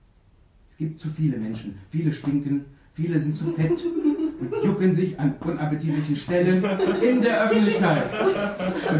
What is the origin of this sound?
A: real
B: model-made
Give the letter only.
A